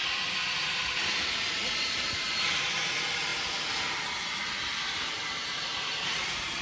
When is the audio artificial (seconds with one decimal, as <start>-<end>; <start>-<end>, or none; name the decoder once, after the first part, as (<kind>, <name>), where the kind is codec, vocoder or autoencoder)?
0.7-3.3 (vocoder, BigVGAN v2); 4.2-6.6